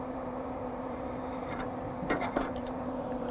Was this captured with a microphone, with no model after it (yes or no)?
no